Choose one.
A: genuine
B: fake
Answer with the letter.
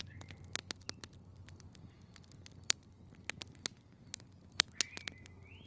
A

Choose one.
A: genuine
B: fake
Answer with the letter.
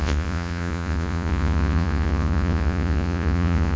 B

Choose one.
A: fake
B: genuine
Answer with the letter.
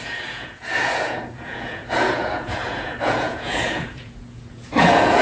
A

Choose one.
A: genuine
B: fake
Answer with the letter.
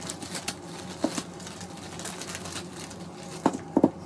A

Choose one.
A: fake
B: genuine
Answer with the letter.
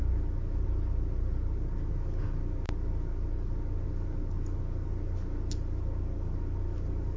B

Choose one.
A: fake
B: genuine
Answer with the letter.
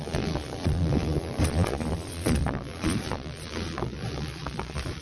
A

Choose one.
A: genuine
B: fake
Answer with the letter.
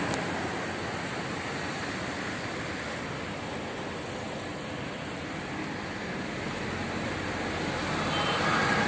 A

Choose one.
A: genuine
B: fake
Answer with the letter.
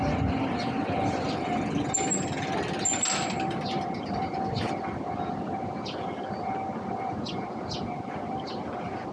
A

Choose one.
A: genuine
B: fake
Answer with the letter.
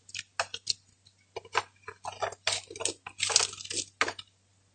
A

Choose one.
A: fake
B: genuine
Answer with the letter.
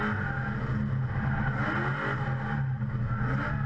B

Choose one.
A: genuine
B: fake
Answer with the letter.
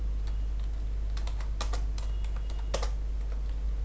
A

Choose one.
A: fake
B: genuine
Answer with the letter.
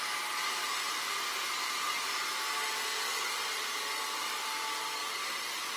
B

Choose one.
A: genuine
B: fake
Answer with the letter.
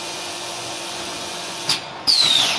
B